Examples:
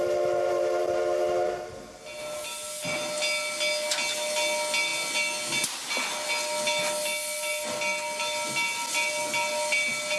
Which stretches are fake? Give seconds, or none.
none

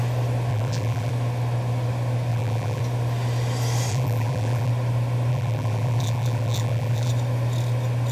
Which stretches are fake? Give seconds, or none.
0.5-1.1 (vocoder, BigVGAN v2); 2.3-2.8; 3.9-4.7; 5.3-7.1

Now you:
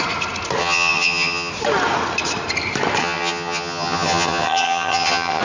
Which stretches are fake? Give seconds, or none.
0.6-1.5 (vocoder, HiFi-GAN); 3.0-5.4

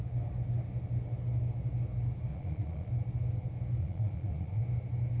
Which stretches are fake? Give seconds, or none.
2.3-2.9 (vocoder, Vocos); 3.8-4.6